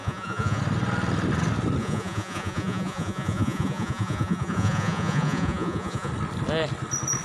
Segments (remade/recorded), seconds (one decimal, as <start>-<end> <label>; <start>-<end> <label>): 0.0-0.6 remade; 0.6-1.8 recorded; 1.8-6.1 remade; 6.1-7.2 recorded